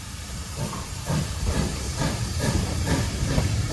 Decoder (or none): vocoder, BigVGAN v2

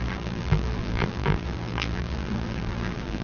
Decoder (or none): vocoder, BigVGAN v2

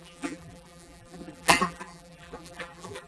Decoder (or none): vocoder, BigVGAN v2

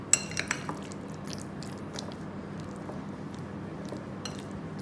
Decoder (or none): none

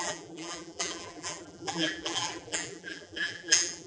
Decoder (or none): vocoder, BigVGAN v2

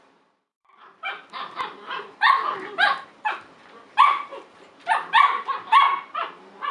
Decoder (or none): vocoder, BigVGAN v2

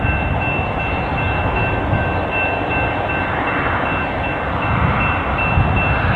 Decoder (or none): none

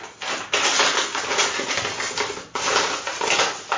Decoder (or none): none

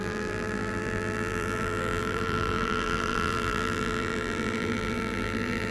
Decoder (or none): vocoder, BigVGAN v2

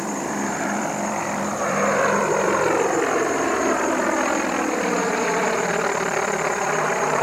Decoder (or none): vocoder, BigVGAN v2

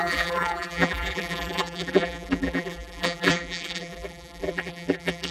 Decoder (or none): vocoder, BigVGAN v2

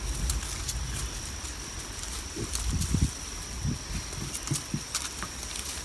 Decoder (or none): none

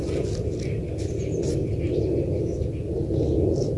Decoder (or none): none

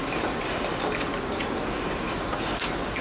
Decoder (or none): vocoder, BigVGAN v2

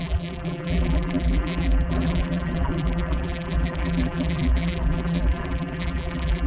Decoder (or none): vocoder, BigVGAN v2